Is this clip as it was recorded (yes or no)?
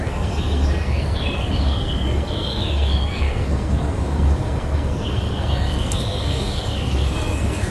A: no